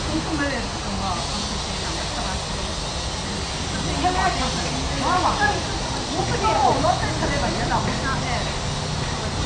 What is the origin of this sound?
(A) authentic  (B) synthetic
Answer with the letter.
A